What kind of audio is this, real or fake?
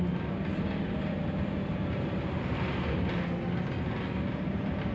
real